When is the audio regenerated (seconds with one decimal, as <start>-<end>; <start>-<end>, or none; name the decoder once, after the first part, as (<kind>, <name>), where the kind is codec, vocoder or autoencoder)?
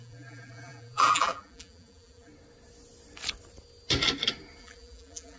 0.0-2.3 (vocoder, BigVGAN v2); 4.6-5.4